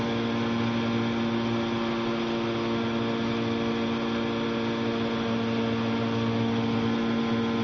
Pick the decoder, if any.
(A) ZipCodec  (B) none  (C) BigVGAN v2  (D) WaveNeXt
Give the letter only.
B